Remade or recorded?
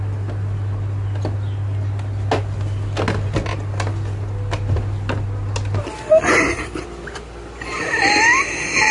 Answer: recorded